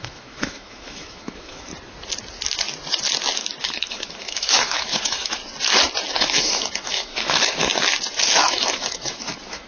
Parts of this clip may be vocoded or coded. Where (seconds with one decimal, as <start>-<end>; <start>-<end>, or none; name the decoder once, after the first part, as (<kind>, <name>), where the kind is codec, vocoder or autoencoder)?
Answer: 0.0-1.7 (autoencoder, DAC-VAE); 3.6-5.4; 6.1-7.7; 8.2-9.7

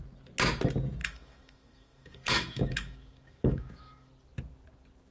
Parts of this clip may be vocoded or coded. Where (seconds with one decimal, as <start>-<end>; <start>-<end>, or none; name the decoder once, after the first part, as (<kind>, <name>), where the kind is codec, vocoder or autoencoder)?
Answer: 1.0-4.1 (autoencoder, DAC-VAE)

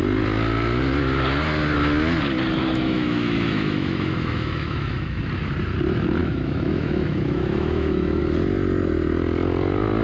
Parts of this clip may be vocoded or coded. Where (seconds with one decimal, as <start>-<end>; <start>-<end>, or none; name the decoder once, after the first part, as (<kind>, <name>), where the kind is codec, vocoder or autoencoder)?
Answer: 2.6-5.2 (autoencoder, DAC-VAE); 6.2-8.2

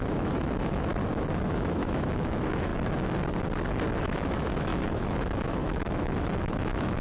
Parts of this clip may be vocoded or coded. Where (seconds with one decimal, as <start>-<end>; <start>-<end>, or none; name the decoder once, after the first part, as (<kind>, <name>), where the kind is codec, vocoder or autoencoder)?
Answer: 0.0-0.9 (autoencoder, DAC-VAE); 1.5-2.7; 4.0-7.0